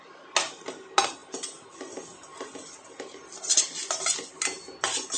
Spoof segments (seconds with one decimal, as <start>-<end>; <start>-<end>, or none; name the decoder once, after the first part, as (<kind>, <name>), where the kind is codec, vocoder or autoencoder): none